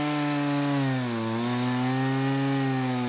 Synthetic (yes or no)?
no